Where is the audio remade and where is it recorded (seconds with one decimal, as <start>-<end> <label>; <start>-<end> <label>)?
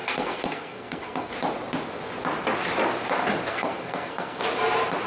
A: 0.0-1.3 remade; 1.3-3.5 recorded; 3.5-4.4 remade; 4.4-5.1 recorded